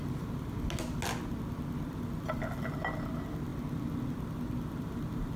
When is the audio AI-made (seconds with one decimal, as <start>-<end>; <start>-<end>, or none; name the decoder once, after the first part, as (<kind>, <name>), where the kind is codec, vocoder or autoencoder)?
none